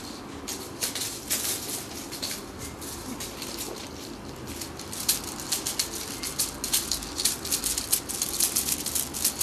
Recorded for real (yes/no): yes